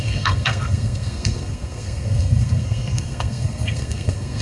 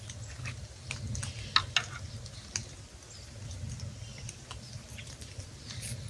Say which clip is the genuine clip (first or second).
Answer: second